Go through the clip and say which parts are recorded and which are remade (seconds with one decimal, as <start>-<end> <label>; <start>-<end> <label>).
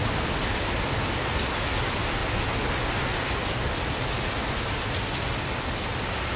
0.0-6.4 recorded